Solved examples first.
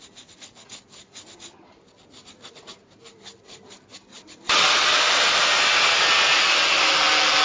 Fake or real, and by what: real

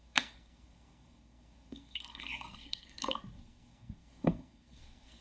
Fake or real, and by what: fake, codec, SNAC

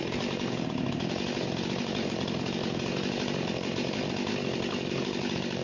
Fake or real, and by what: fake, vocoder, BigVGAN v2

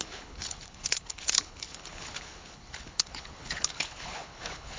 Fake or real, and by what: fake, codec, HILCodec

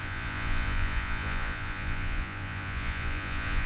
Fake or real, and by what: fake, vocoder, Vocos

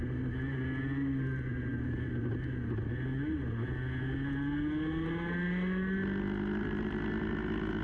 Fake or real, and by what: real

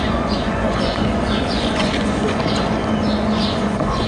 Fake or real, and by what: fake, vocoder, Vocos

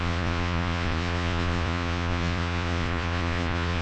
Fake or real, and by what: fake, vocoder, Vocos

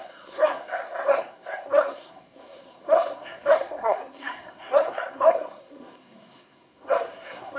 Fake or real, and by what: fake, codec, SNAC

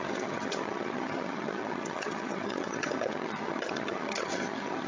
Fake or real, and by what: fake, vocoder, HiFi-GAN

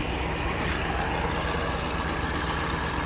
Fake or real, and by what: real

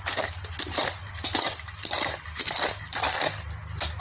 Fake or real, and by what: real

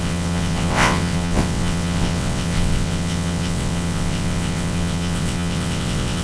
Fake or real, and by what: fake, vocoder, WaveNeXt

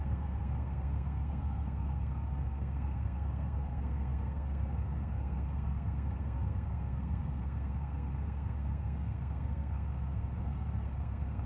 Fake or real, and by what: fake, codec, SNAC